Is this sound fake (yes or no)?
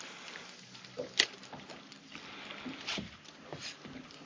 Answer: no